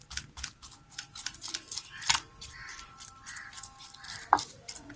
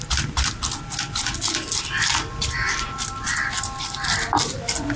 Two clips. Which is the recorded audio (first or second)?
second